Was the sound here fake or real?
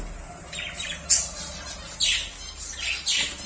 real